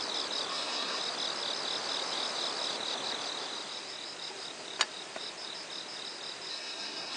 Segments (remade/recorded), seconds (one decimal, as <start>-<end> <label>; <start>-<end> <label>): 0.0-0.5 recorded; 0.5-1.0 remade; 1.0-6.5 recorded; 6.5-7.2 remade